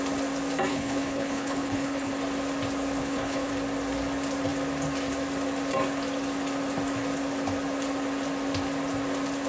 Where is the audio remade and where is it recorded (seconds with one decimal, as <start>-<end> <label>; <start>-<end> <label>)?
0.0-0.7 recorded; 0.7-2.1 remade; 2.1-3.0 recorded; 3.0-3.5 remade; 3.5-9.5 recorded